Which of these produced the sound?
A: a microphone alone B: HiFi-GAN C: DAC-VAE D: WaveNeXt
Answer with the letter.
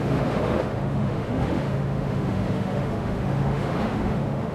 C